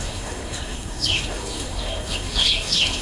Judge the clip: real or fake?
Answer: fake